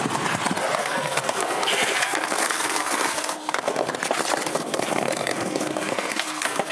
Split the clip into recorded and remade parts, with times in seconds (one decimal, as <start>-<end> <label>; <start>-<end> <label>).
0.0-0.8 recorded; 0.8-3.9 remade; 3.9-4.5 recorded; 4.5-6.7 remade